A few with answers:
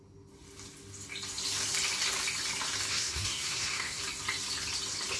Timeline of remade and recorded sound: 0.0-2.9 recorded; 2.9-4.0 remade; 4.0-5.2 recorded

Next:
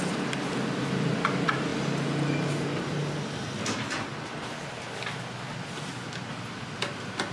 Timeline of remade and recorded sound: 0.0-7.3 recorded